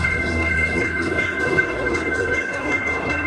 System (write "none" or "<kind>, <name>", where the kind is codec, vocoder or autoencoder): codec, SNAC